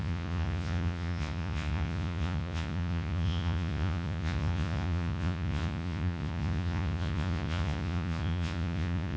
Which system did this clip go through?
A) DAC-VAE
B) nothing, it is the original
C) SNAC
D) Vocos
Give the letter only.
D